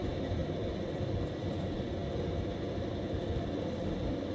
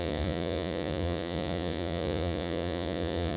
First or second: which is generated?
second